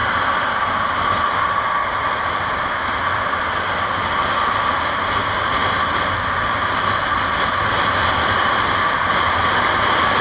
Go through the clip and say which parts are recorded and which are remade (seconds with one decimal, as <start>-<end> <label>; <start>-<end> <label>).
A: 0.0-10.2 recorded